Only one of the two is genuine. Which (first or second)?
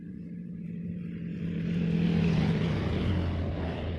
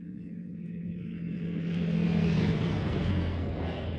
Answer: first